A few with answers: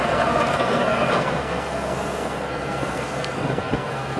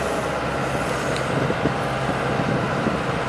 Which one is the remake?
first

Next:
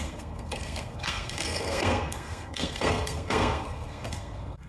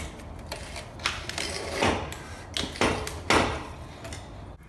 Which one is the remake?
first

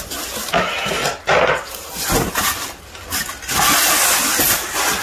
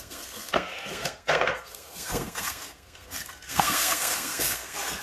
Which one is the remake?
second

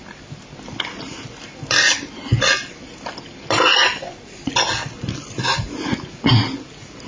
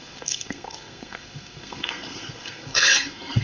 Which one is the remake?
second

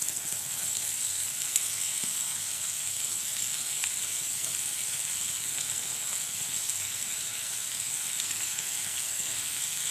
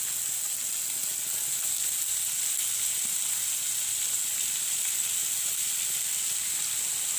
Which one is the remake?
first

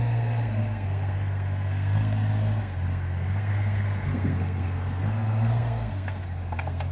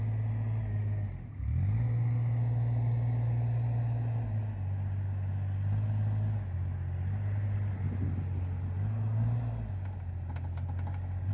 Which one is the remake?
first